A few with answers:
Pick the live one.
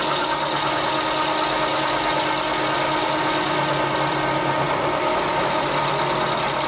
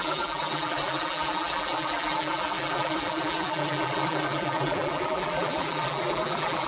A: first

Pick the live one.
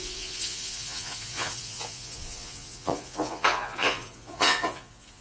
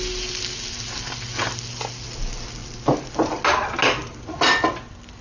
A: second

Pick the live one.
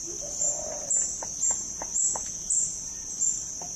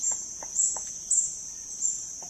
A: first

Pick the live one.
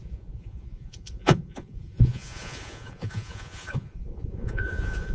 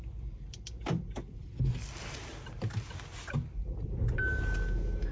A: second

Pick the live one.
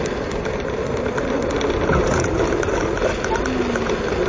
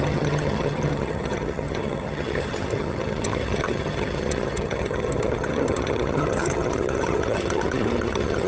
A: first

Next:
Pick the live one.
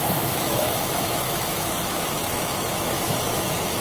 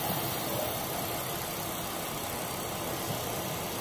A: second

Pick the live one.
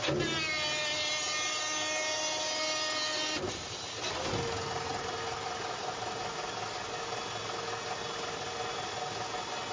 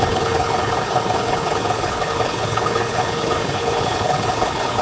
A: first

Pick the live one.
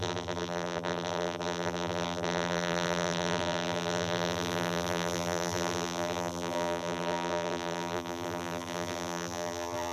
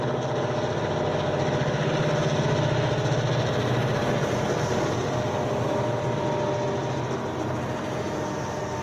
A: second